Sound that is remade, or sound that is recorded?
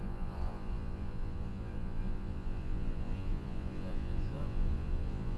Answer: remade